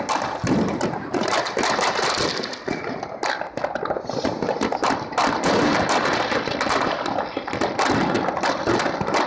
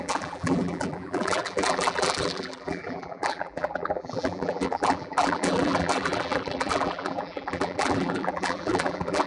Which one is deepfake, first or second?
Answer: second